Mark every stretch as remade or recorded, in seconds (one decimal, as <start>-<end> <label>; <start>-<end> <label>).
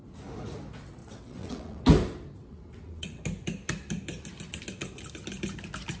0.0-1.0 recorded; 1.0-1.8 remade; 1.8-2.4 recorded; 2.4-3.2 remade; 3.2-6.0 recorded